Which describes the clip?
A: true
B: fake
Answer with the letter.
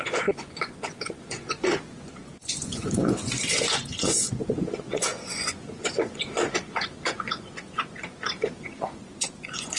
B